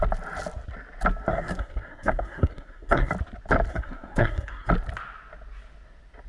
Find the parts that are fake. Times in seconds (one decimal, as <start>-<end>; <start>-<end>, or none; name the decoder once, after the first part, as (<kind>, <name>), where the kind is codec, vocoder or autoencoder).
1.3-3.1 (codec, SNAC); 3.7-4.7

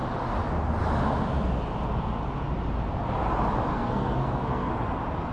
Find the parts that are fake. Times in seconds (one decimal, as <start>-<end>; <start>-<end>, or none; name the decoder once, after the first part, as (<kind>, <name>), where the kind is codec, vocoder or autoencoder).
3.7-4.7 (codec, SNAC)

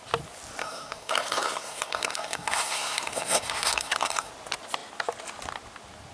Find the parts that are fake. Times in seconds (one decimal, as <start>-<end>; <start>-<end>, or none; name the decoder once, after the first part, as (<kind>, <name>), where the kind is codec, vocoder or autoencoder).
0.6-4.3 (codec, SNAC)